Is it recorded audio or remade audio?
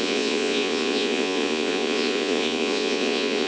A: remade